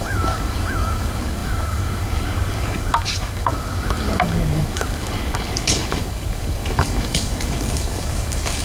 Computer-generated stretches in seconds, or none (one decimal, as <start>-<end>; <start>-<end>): 0.0-8.6